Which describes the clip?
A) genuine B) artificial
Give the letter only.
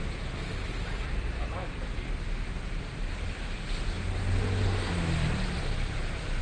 A